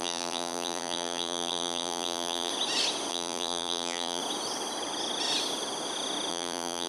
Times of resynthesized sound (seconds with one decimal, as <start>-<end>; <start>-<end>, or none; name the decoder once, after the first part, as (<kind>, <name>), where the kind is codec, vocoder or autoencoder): 0.0-2.5 (vocoder, BigVGAN v2); 3.1-4.2; 6.3-6.9